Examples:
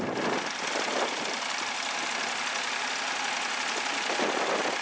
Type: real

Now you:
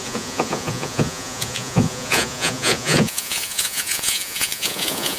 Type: fake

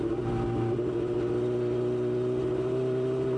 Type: real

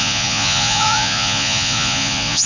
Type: fake